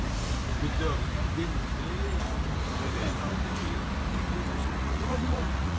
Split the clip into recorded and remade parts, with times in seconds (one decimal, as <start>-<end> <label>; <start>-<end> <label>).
0.0-4.6 recorded; 4.6-5.8 remade